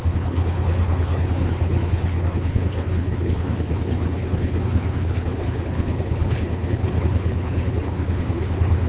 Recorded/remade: remade